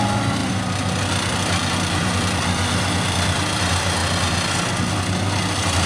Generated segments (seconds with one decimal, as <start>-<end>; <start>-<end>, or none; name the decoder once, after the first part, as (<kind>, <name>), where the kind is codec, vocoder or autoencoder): 0.4-3.6 (vocoder, BigVGAN v2)